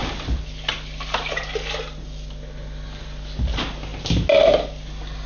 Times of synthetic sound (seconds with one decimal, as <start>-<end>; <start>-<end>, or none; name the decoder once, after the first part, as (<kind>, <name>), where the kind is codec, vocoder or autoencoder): none

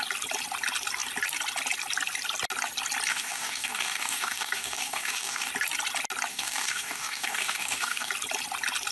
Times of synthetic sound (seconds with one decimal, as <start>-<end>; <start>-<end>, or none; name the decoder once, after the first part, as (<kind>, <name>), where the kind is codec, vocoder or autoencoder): 3.1-5.5 (codec, DAC); 6.3-8.1

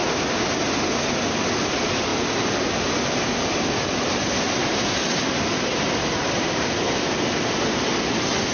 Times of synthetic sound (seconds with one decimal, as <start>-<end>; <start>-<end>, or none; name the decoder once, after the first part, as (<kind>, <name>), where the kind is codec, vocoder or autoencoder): none

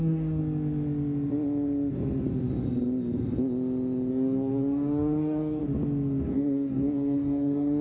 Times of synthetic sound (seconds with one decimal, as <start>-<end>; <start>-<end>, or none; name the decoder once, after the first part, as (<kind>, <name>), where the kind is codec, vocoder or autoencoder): 0.0-0.4 (codec, DAC); 4.1-5.6; 6.2-7.8

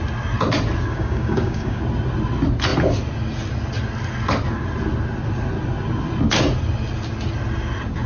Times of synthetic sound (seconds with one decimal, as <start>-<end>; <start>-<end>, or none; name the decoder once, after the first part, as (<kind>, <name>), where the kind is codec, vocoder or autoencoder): 0.9-1.8 (codec, DAC)

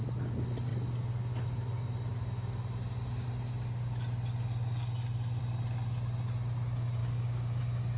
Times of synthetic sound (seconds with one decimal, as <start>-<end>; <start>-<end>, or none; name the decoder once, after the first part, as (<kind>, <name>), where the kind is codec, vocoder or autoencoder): 7.0-7.6 (codec, DAC)